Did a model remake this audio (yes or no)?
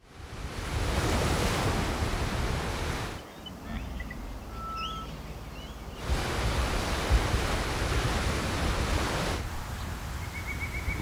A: no